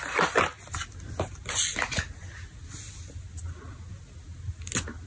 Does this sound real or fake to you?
real